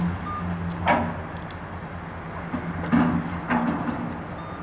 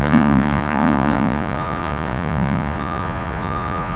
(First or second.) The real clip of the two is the first